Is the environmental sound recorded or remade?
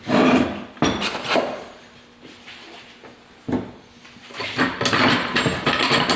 recorded